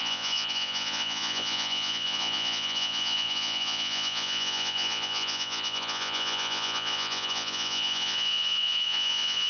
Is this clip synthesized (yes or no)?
yes